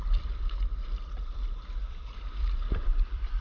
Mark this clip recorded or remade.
remade